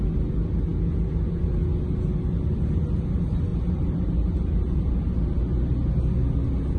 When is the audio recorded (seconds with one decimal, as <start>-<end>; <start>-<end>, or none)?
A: 0.0-3.5; 5.1-6.8